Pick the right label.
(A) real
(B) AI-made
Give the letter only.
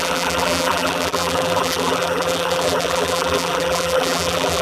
B